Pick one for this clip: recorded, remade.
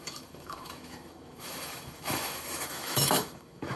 remade